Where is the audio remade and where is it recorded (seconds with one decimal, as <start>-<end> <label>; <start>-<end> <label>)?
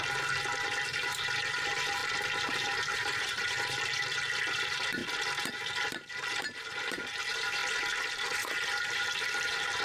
0.0-5.0 remade; 5.0-5.5 recorded; 5.5-7.6 remade; 7.6-8.1 recorded; 8.1-9.8 remade